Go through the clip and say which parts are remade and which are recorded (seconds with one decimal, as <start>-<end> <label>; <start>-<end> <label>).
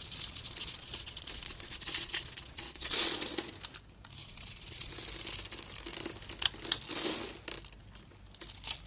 0.0-3.5 remade; 3.5-4.2 recorded; 4.2-4.9 remade; 4.9-8.9 recorded